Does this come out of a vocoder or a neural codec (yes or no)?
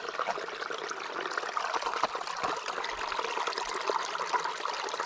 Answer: no